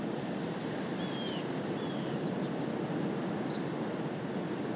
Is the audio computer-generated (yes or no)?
no